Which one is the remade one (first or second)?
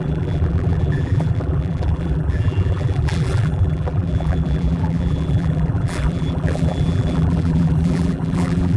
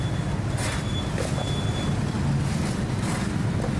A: first